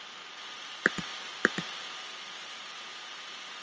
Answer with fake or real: real